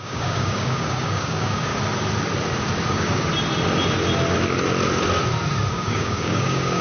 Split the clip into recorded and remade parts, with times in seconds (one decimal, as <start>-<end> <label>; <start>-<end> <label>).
0.0-1.7 remade; 1.7-2.9 recorded; 2.9-3.3 remade; 3.3-5.7 recorded; 5.7-6.8 remade